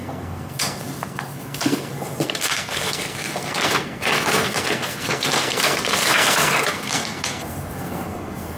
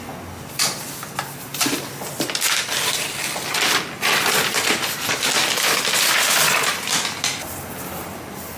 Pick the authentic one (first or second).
second